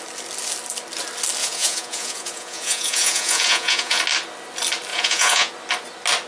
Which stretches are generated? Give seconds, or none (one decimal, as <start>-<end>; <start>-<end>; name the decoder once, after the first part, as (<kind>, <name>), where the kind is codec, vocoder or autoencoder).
1.4-4.0 (vocoder, Vocos); 4.9-5.5